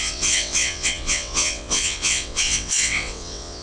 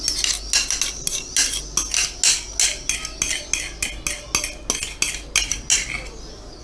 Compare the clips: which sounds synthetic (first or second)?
first